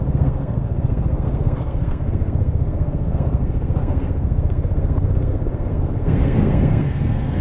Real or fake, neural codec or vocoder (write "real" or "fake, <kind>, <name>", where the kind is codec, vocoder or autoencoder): fake, codec, SNAC